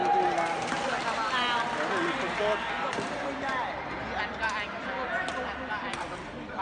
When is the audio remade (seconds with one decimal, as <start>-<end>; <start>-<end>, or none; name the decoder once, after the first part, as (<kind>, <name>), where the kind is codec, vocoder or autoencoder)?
none